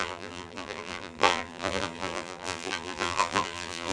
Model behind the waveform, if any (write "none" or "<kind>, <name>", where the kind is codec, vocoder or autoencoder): vocoder, BigVGAN v2